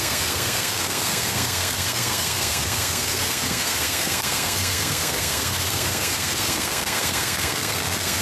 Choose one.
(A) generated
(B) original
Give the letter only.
A